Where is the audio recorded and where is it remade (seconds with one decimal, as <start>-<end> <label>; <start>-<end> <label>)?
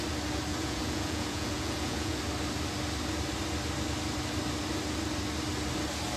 0.0-0.5 recorded; 0.5-2.2 remade; 2.2-6.2 recorded